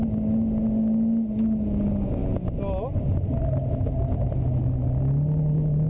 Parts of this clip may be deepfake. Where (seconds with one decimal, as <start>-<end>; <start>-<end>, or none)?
none